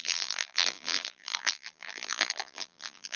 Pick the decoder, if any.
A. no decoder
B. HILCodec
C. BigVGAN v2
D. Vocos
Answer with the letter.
C